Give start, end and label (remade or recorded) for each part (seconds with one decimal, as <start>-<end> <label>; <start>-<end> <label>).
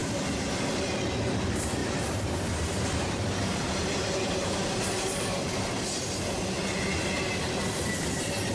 0.0-1.8 recorded; 1.8-6.0 remade; 6.0-8.5 recorded